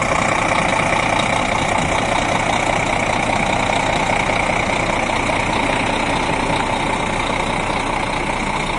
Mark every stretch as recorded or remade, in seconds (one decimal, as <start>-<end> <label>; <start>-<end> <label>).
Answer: 0.0-8.8 recorded